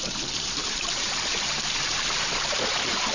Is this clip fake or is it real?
fake